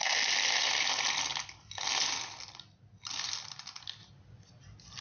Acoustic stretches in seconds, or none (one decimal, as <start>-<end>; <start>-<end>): 0.0-5.0